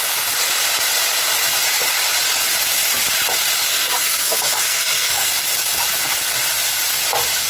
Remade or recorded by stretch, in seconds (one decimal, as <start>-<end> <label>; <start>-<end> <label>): 0.0-3.7 recorded; 3.7-5.3 remade; 5.3-7.5 recorded